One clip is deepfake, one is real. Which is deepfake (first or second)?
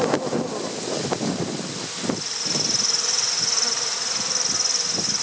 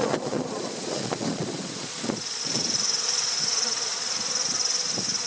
second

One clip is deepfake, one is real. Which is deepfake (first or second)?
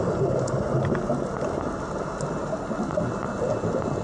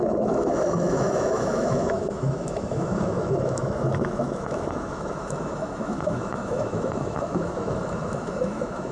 second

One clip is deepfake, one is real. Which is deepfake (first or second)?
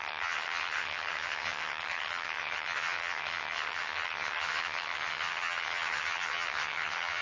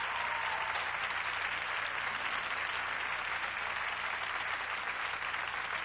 first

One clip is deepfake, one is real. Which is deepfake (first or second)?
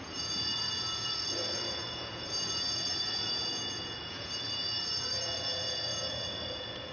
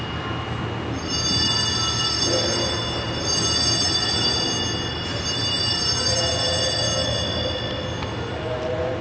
first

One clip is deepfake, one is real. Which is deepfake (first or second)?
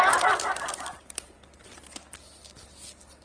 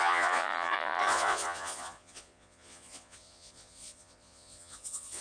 second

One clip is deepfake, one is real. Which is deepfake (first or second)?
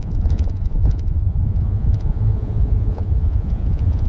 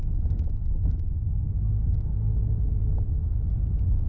first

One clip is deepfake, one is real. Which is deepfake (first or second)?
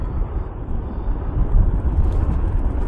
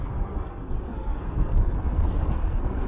second